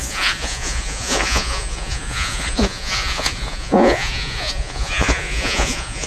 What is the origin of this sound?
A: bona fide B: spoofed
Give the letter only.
B